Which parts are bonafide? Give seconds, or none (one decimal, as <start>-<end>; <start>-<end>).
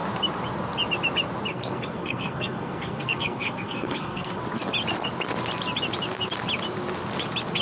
0.0-1.5; 4.4-7.6